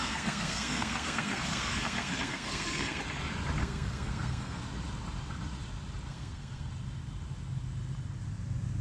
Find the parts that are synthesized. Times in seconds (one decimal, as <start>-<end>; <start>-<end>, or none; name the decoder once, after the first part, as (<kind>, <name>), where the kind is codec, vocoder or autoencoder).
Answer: 0.0-3.0 (codec, SNAC); 3.6-4.6; 6.1-6.7